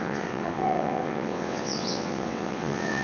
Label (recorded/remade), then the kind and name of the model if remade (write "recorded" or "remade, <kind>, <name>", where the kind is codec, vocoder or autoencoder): remade, vocoder, WaveNeXt